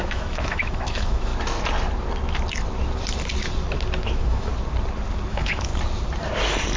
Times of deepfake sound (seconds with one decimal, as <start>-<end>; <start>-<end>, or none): 0.0-1.3; 4.0-4.5; 5.3-5.7